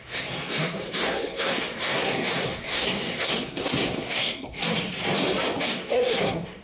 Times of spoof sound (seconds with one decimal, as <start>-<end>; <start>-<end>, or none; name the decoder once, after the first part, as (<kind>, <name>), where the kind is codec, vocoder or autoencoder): 0.0-4.6 (codec, SNAC); 5.6-6.6